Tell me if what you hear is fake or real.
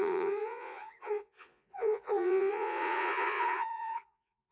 fake